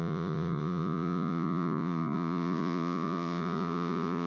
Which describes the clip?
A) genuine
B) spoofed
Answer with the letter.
B